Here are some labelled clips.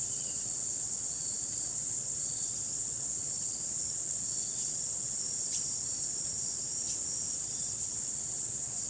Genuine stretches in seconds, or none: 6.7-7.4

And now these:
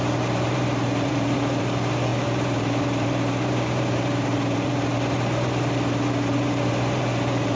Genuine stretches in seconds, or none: none

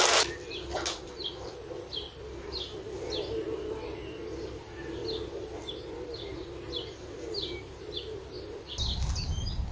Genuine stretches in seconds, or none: 0.0-9.7

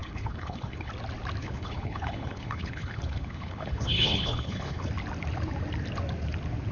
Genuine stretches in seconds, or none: 0.9-1.4; 4.9-6.7

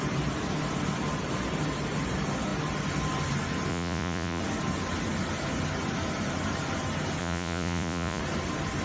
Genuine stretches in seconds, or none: 0.0-3.7; 4.4-7.2; 8.2-8.8

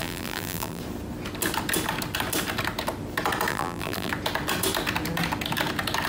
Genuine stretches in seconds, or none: 0.8-3.5; 4.1-6.1

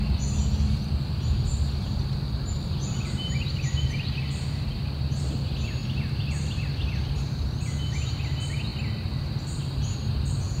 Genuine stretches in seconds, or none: 0.0-10.6

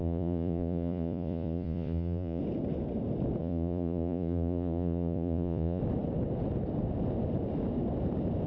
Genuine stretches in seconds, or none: 2.4-3.4; 5.8-8.5